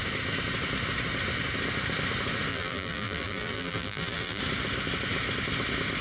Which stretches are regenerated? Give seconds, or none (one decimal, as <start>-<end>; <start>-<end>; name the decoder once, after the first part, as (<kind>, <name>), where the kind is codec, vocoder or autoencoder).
2.5-4.4 (vocoder, BigVGAN v2)